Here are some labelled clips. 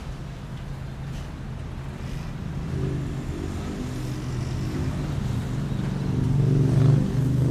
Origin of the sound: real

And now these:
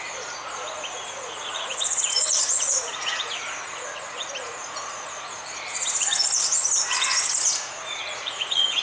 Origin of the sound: fake